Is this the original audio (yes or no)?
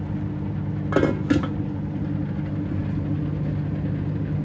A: yes